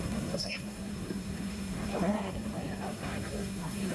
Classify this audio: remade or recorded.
remade